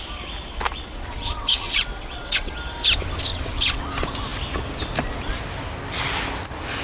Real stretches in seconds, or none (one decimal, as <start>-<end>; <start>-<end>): 0.0-0.9; 2.5-3.3; 3.8-6.8